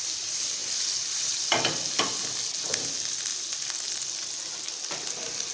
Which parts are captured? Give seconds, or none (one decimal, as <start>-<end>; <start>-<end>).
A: 0.0-0.6; 1.7-3.3; 3.8-5.5

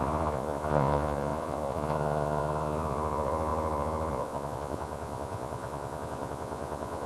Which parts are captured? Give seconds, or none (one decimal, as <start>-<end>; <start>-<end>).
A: none

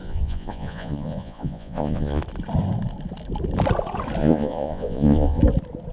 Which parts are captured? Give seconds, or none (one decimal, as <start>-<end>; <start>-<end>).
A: 2.2-4.2; 5.4-5.9

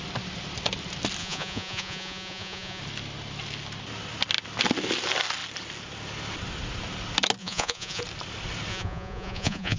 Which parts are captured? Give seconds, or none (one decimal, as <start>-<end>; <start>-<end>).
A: 0.0-1.2; 2.8-7.4; 8.0-8.7